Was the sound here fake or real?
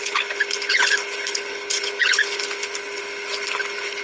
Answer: fake